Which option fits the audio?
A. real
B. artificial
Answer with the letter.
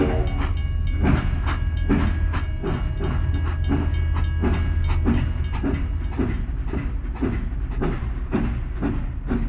A